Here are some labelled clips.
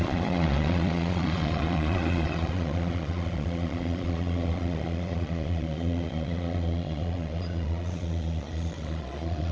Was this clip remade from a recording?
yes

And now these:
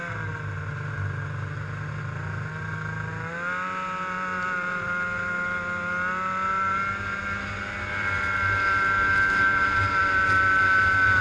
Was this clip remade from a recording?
no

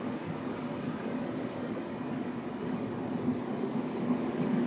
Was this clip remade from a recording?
yes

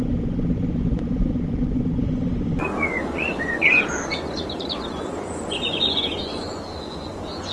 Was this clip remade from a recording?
yes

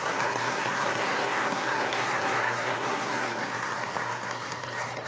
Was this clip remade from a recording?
yes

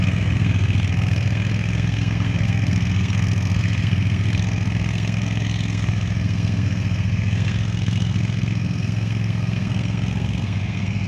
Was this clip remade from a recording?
yes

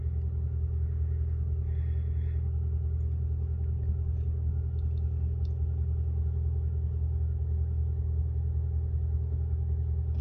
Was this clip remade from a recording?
no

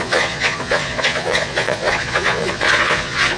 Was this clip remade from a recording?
yes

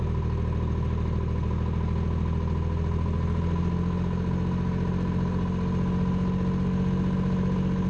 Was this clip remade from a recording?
no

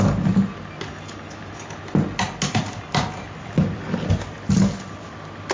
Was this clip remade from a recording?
no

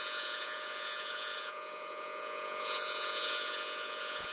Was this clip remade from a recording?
yes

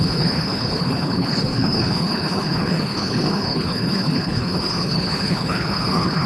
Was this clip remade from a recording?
yes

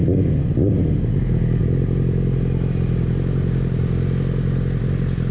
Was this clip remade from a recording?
no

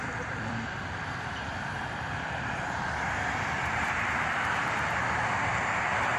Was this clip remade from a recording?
yes